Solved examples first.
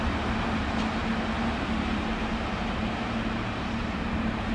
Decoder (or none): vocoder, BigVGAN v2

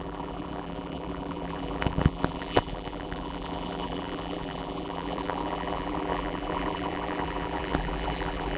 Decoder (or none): vocoder, BigVGAN v2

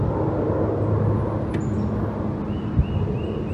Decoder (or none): none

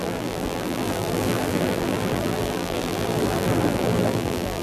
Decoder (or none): vocoder, BigVGAN v2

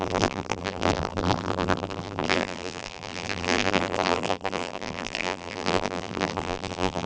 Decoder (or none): vocoder, BigVGAN v2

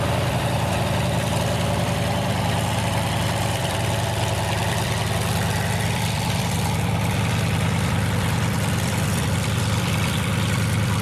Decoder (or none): vocoder, BigVGAN v2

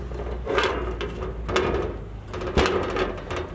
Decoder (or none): none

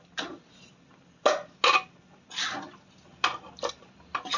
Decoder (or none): none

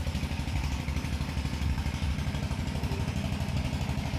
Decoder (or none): none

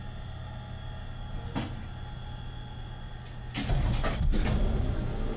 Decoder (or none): none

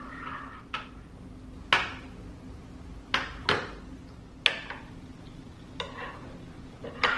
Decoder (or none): none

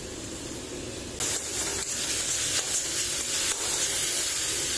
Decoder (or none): none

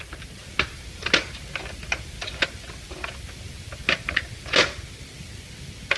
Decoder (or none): none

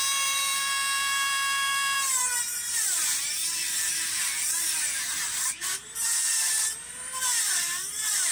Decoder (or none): vocoder, BigVGAN v2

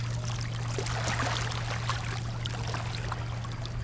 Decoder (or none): none